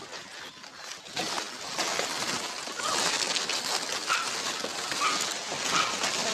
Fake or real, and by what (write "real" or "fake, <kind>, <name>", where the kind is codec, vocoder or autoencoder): real